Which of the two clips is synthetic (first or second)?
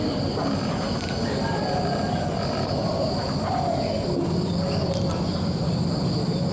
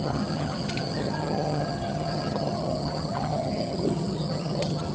second